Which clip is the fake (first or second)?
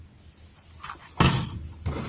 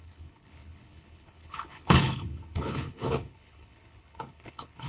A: second